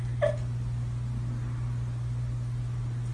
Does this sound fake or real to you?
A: real